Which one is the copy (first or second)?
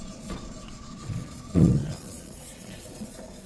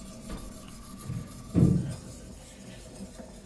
first